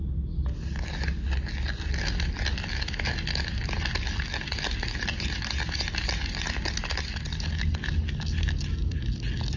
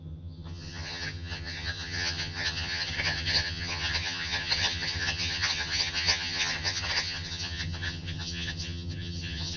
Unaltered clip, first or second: first